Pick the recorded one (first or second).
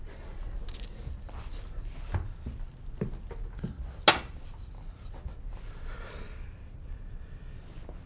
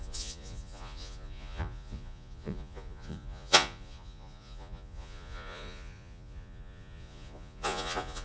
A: first